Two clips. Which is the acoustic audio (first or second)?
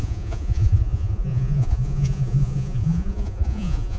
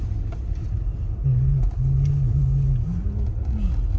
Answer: second